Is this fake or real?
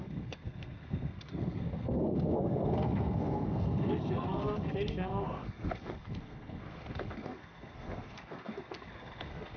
fake